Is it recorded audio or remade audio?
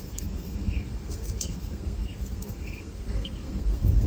remade